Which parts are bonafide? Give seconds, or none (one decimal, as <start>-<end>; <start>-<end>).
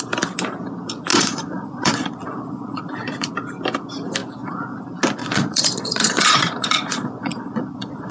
0.0-1.1; 3.3-4.2; 4.8-5.2